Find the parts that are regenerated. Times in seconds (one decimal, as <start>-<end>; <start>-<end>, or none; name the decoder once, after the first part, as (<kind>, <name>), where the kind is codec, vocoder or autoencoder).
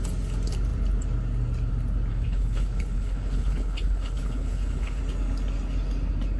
2.1-5.0 (codec, HILCodec)